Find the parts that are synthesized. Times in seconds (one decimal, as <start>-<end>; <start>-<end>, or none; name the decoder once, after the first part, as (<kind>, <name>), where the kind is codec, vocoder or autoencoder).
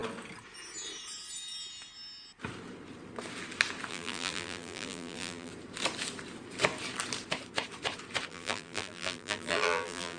3.9-5.5 (vocoder, BigVGAN v2); 8.3-10.2